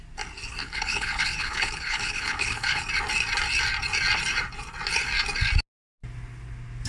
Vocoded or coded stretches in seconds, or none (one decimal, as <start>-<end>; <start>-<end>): 0.6-2.8